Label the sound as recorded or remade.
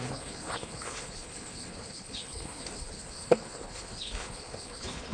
remade